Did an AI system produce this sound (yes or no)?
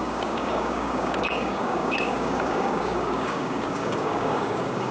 yes